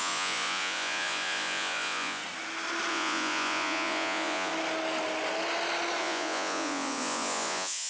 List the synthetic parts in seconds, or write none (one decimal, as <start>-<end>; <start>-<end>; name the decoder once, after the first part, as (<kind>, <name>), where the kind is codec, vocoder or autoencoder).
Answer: 0.0-2.2 (vocoder, Vocos); 2.9-4.5; 6.0-7.9